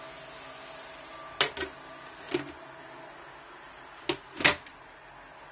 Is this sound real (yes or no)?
yes